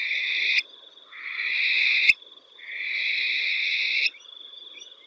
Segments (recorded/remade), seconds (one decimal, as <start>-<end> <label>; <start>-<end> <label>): 0.0-5.1 recorded